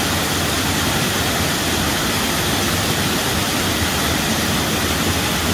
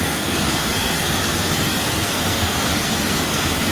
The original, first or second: first